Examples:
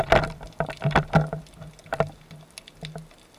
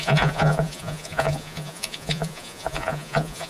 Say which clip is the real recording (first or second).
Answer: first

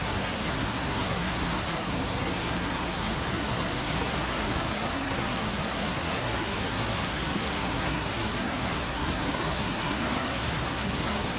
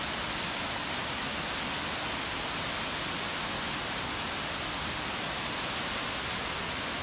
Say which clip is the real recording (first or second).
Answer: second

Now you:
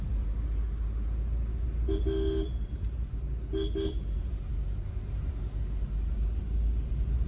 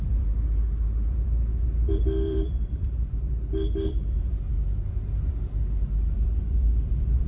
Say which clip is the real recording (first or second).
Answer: first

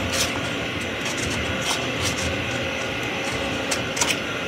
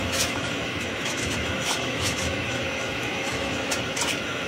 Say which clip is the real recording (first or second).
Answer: first